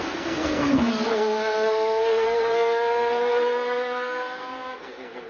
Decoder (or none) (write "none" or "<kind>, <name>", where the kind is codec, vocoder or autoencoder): codec, SNAC